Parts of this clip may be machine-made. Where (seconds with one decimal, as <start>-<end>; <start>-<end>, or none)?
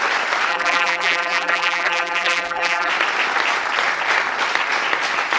0.5-2.9